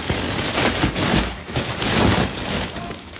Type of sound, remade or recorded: remade